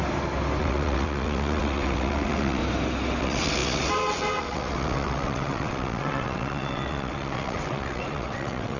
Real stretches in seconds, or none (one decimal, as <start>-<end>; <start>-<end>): 0.0-0.6; 2.6-3.2